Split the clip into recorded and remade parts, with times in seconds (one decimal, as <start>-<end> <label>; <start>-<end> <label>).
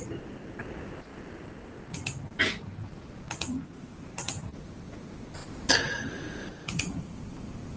0.0-7.8 recorded